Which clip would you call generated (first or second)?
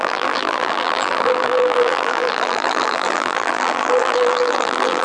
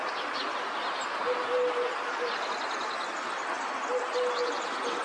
first